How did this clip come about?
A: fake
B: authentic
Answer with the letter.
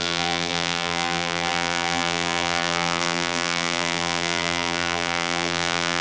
A